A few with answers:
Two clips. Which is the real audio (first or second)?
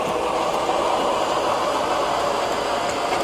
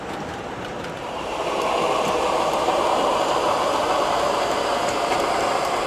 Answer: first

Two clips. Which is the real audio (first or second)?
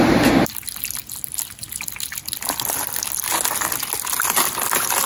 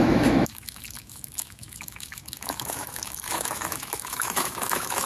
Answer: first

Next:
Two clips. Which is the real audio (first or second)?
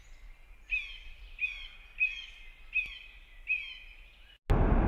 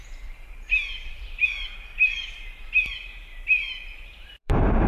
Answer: first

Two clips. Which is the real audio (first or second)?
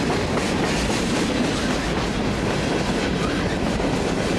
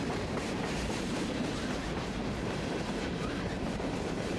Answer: first